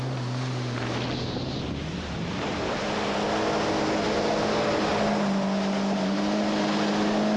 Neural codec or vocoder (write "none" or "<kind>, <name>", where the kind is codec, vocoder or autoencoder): none